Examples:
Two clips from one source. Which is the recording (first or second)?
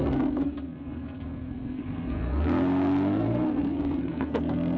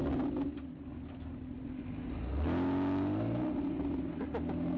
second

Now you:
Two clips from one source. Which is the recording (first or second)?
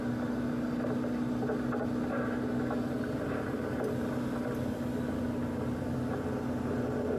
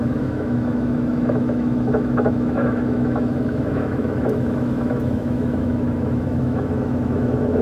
first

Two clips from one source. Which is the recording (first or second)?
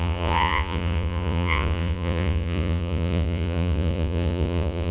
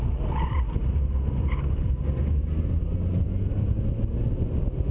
second